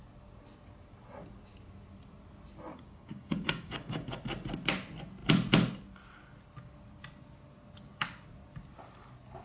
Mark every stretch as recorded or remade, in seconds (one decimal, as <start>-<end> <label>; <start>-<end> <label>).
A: 0.0-2.7 recorded; 2.7-4.2 remade; 4.2-9.4 recorded